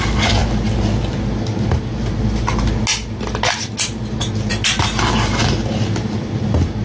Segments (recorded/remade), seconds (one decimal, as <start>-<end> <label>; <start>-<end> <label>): 0.0-5.4 recorded; 5.4-6.8 remade